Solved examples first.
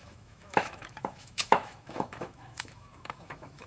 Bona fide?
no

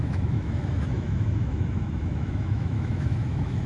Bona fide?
no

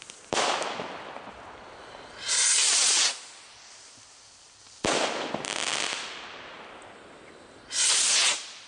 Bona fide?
yes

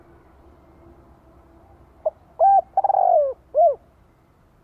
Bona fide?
yes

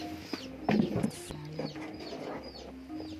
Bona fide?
yes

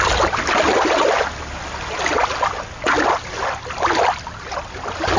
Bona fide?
yes